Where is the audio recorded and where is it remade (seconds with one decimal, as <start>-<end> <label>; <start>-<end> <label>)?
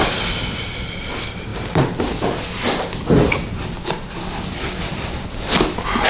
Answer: 0.0-6.1 recorded